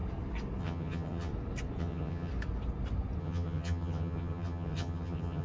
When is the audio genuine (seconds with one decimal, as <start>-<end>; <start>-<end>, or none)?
0.0-0.6; 1.3-1.8; 2.3-3.2

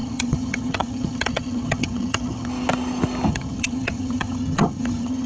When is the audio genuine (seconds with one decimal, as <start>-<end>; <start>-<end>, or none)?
2.5-3.3

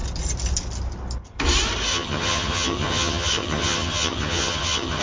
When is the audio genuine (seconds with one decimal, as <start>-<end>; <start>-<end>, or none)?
0.0-1.9

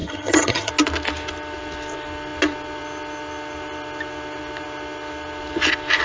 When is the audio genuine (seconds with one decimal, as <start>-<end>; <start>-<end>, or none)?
0.7-6.0

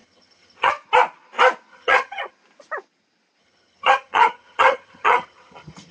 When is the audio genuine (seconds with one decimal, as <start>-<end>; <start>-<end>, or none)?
0.7-1.7; 2.3-3.4

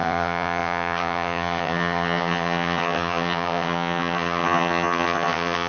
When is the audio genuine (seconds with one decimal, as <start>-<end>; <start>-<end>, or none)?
none

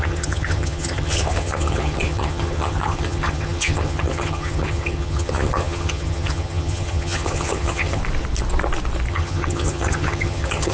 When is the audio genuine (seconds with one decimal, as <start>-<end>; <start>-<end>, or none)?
8.0-9.1